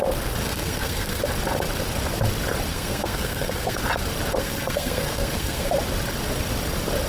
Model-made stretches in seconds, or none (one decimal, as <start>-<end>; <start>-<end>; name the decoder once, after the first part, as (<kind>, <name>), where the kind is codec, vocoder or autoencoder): 0.4-1.2 (codec, SNAC); 2.7-3.8; 4.4-5.7